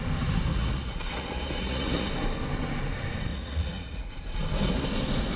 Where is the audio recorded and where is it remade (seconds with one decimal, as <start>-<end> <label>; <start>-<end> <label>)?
0.0-0.5 recorded; 0.5-2.1 remade; 2.1-3.3 recorded; 3.3-4.1 remade; 4.1-5.4 recorded